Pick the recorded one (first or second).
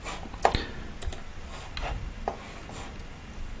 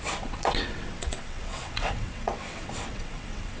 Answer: first